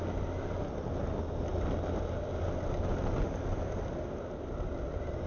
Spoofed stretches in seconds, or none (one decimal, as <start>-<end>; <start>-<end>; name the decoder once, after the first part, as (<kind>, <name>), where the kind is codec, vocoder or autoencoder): none